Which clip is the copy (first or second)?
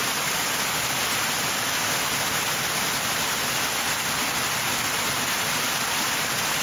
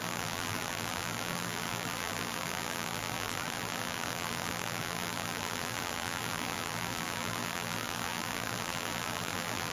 second